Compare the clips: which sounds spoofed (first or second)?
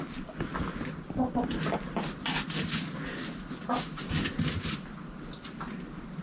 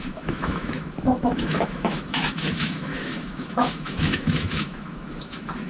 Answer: second